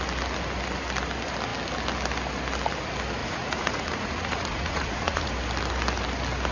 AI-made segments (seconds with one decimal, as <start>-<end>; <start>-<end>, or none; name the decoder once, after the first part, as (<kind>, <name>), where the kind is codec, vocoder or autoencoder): 3.2-5.3 (vocoder, Vocos)